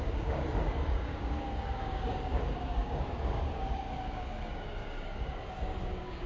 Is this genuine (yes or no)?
no